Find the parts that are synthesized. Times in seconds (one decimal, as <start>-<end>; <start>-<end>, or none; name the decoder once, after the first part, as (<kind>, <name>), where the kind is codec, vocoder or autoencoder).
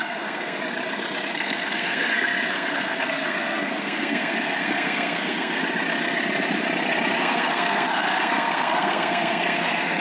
0.0-0.6 (codec, SNAC); 1.3-5.6; 7.2-10.0